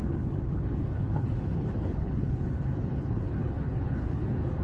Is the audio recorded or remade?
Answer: remade